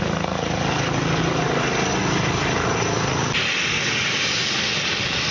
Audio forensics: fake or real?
real